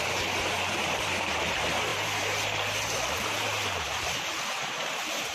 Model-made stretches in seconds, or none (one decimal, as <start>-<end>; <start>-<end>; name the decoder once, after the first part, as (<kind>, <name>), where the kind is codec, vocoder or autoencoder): 0.0-5.3 (vocoder, BigVGAN v2)